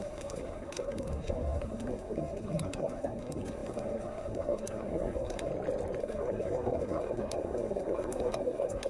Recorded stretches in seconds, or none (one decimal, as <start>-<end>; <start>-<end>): 5.5-6.0